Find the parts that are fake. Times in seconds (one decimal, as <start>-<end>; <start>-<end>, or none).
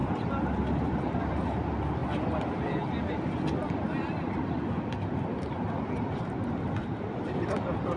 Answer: 0.0-1.0; 6.8-7.3